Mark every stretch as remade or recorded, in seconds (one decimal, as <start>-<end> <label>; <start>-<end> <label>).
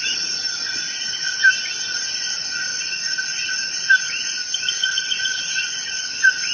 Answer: 0.0-2.7 recorded; 2.7-3.7 remade; 3.7-4.8 recorded; 4.8-5.9 remade; 5.9-6.5 recorded